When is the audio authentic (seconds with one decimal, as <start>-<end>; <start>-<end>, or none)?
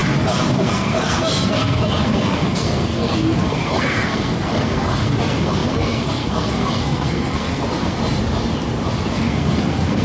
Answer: 0.0-0.6; 8.0-9.1